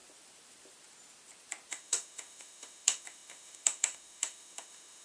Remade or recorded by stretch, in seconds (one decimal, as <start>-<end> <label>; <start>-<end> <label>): 0.0-1.7 recorded; 1.7-5.0 remade